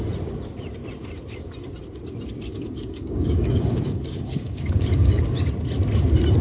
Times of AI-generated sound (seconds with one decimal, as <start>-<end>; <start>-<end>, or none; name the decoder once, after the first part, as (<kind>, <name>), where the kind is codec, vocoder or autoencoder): 2.5-5.2 (codec, DAC)